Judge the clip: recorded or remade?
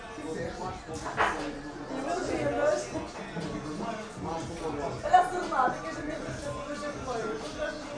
recorded